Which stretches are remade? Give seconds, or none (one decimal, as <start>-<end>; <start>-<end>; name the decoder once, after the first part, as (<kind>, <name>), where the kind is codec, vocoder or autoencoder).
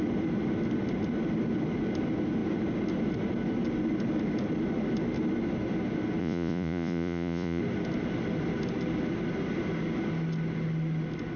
6.2-7.6 (vocoder, Vocos)